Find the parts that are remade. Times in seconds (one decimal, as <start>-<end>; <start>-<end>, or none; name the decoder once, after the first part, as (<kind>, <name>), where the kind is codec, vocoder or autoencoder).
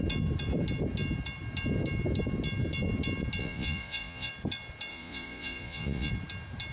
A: 3.4-4.3 (vocoder, Vocos); 4.9-6.1